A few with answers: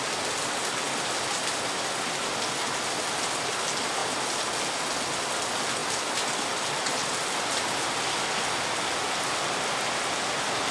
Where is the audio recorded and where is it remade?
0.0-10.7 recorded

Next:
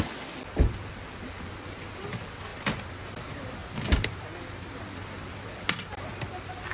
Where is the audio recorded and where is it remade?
0.0-2.5 remade; 2.5-3.1 recorded; 3.1-3.6 remade; 3.6-4.8 recorded; 4.8-6.7 remade

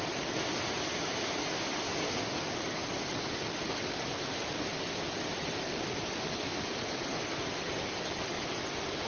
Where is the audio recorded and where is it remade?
0.0-2.8 recorded; 2.8-3.8 remade; 3.8-5.3 recorded; 5.3-7.5 remade; 7.5-9.1 recorded